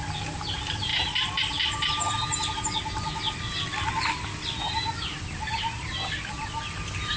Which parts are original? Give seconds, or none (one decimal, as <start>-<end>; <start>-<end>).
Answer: 0.0-7.2